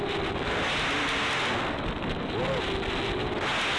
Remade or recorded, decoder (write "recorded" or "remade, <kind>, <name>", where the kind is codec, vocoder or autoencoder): recorded